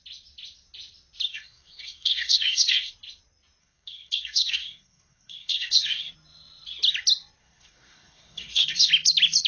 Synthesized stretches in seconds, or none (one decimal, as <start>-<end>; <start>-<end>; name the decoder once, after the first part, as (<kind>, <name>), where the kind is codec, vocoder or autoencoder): 1.3-2.9 (codec, SNAC); 3.6-6.1; 7.4-8.9